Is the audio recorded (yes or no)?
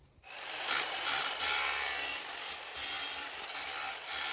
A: no